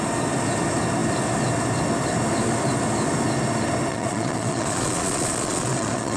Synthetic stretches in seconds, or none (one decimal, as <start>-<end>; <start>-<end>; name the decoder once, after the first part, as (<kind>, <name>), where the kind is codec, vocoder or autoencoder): 3.9-6.2 (vocoder, Vocos)